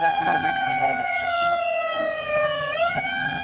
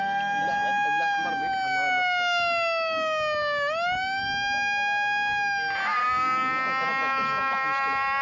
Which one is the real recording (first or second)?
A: second